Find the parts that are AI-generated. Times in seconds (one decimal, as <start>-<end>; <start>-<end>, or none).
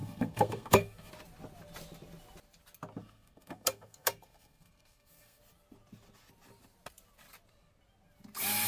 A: 0.0-1.1; 3.0-5.4